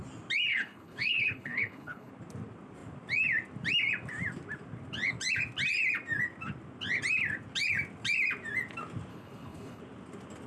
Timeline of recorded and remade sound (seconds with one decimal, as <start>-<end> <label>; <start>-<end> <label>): 0.0-0.5 recorded; 0.5-2.1 remade; 2.1-9.1 recorded; 9.1-9.8 remade; 9.8-10.5 recorded